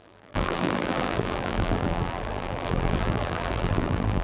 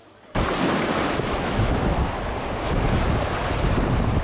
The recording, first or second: second